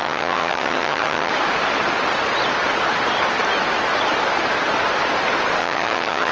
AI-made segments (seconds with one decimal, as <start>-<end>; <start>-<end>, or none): 0.0-1.3; 5.6-6.3